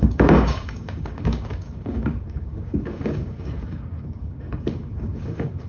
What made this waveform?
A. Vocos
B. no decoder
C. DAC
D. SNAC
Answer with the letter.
C